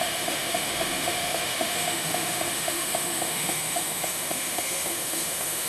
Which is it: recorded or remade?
remade